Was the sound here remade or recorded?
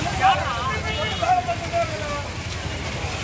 recorded